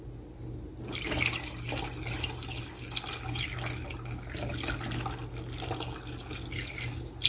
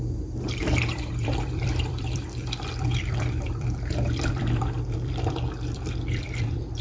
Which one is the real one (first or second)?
first